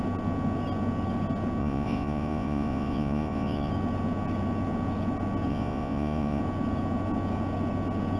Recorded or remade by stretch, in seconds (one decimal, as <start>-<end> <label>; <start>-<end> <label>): 0.0-1.6 recorded; 1.6-3.7 remade; 3.7-5.5 recorded; 5.5-6.4 remade; 6.4-8.2 recorded